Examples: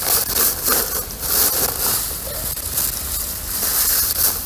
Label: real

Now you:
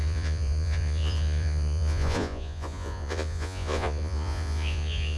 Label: fake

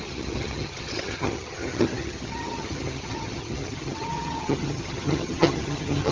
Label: fake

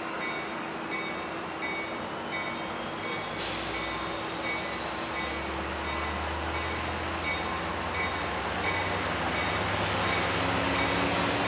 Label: real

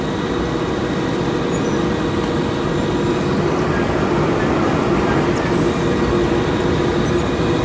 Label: real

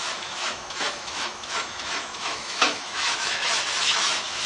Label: fake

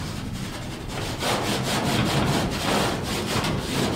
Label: real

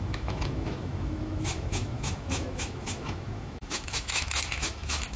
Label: fake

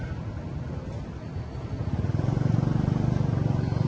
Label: real